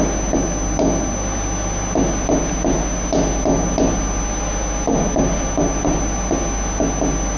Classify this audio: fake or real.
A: real